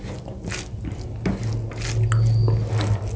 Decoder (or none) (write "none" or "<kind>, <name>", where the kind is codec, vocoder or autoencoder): none